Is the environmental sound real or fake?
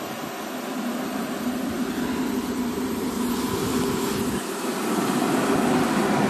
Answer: real